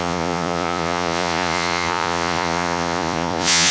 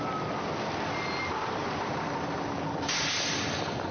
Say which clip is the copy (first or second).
first